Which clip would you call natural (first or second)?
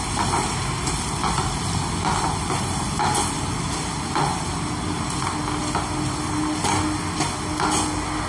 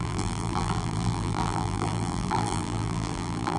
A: first